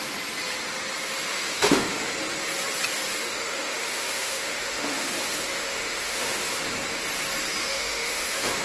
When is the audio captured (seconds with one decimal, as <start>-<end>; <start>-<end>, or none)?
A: 0.0-1.3; 2.1-3.2; 6.6-7.6